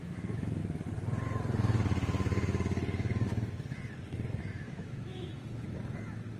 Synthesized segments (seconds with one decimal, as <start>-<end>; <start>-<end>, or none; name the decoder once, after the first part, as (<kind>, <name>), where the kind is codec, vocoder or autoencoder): 0.0-0.6 (autoencoder, DAC-VAE); 4.4-5.3